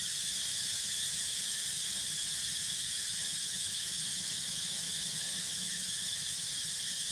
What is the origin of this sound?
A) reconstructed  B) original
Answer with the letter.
A